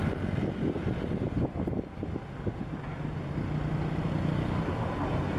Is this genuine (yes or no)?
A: yes